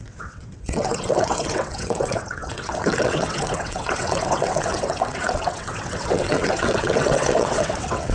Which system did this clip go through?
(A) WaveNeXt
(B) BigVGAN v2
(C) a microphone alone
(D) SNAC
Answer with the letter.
A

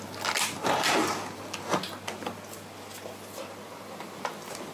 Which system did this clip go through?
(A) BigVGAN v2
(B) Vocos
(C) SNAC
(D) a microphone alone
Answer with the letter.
D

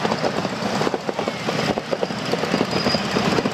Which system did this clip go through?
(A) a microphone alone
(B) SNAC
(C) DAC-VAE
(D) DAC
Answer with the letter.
A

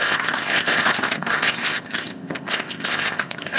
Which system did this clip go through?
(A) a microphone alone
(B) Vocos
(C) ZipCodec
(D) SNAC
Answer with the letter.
C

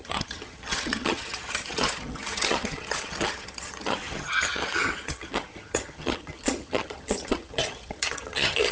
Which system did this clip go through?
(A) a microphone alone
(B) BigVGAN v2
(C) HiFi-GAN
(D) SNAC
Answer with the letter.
C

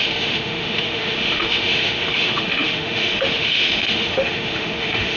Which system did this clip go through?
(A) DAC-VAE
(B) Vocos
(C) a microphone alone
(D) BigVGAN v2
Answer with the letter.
A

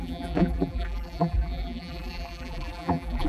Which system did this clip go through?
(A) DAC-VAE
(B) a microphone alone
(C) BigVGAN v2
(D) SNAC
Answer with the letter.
C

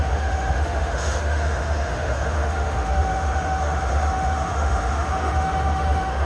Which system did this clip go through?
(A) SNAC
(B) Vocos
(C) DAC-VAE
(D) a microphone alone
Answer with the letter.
C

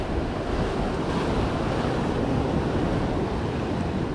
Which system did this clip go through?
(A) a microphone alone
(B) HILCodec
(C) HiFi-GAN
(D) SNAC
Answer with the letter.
A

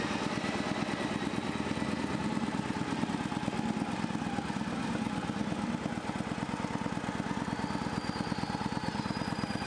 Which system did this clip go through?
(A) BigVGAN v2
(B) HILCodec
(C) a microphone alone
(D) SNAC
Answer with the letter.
C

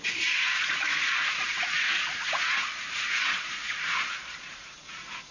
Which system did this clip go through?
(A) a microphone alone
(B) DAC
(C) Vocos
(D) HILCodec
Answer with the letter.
C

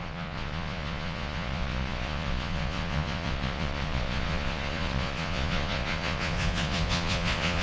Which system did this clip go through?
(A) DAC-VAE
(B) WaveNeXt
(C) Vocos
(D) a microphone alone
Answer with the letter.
C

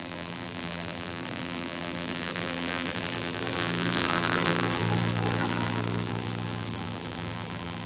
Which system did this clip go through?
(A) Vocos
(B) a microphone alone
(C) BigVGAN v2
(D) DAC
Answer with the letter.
C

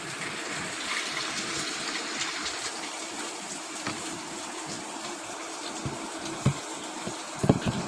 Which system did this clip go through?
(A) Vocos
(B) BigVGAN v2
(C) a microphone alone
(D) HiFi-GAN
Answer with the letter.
C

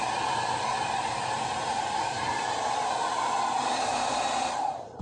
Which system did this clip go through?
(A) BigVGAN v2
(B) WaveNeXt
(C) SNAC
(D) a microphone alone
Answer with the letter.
A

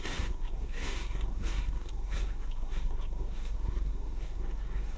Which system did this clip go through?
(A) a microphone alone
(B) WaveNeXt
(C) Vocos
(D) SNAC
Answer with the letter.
D